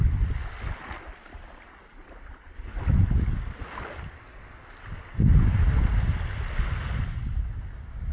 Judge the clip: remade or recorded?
recorded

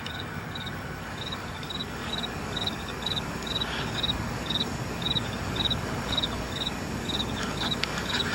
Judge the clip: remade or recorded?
remade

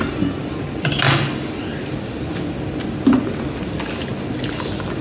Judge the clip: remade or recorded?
recorded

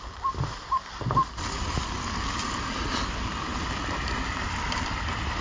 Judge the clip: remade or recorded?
recorded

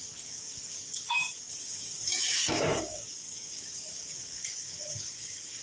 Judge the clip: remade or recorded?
remade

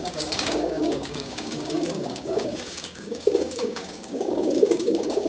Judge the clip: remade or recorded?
remade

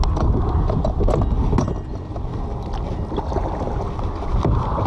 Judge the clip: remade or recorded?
recorded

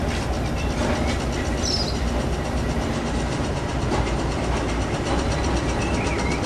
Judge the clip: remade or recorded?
recorded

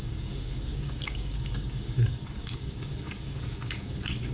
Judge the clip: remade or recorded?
remade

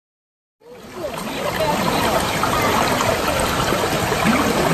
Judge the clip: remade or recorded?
recorded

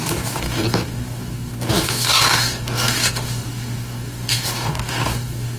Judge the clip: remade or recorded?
remade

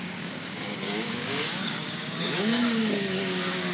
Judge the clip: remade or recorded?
remade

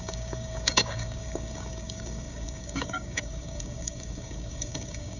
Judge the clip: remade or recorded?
remade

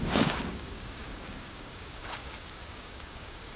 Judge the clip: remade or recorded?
remade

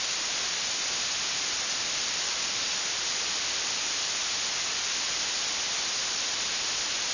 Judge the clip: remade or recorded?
recorded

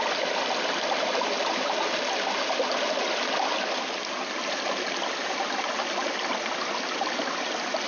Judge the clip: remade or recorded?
recorded